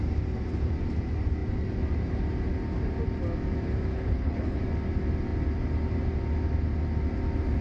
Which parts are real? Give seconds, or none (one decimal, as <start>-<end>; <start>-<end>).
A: 0.0-3.9; 4.6-7.6